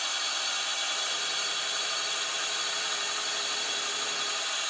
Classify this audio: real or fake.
fake